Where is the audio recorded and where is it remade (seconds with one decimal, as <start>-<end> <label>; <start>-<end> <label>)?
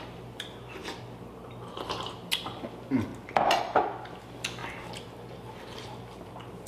0.0-6.7 recorded